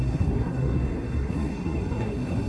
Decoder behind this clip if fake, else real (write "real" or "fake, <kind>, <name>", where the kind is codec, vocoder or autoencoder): fake, codec, SNAC